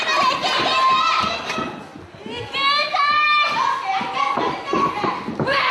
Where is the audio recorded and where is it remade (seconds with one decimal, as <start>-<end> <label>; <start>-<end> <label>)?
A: 0.0-5.7 recorded